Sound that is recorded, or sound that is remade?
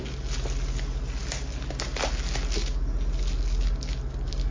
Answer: recorded